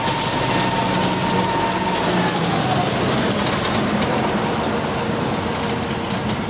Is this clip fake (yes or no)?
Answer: no